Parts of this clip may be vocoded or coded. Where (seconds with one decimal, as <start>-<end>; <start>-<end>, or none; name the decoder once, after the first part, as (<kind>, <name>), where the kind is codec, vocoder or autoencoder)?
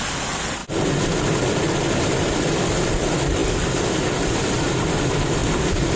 0.0-0.6 (vocoder, BigVGAN v2); 2.0-3.4; 4.1-5.4